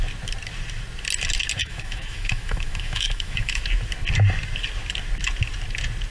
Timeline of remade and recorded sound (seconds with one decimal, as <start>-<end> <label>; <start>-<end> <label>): 0.0-1.6 recorded; 1.6-3.6 remade; 3.6-6.1 recorded